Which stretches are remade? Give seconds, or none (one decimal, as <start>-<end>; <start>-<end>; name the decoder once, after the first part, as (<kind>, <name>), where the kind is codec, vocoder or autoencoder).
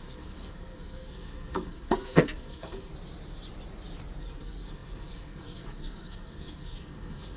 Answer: 0.0-2.9 (codec, SNAC); 4.2-7.4